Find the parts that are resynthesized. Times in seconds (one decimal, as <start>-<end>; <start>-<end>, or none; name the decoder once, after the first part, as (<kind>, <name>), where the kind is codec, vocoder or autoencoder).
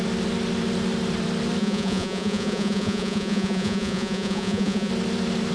1.6-4.9 (vocoder, Vocos)